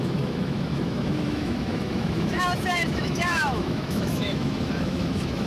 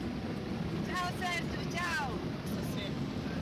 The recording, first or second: second